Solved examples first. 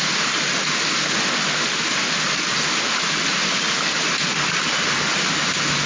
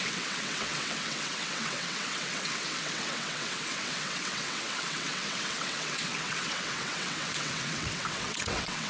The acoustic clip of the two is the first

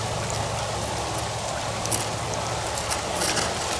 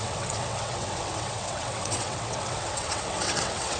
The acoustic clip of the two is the first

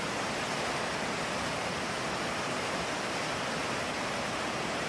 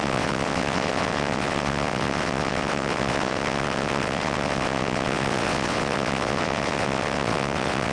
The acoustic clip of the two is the first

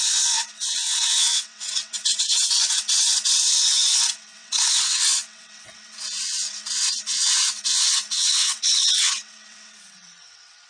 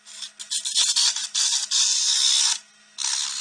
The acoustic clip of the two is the second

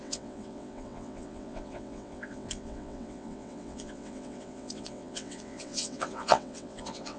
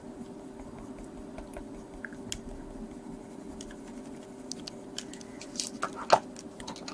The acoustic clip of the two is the second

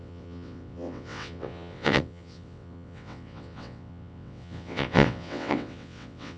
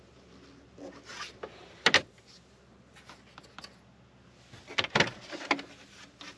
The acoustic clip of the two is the second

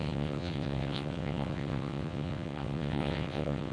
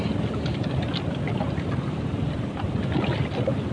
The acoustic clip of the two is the second